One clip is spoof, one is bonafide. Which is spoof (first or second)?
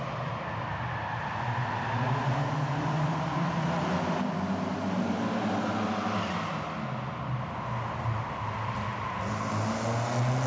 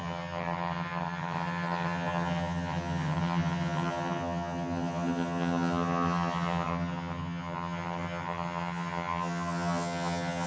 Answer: second